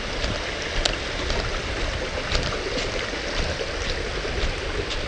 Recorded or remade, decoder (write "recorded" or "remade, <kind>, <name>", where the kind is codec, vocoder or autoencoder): recorded